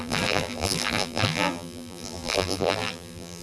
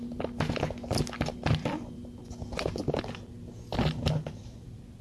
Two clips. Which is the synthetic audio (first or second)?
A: first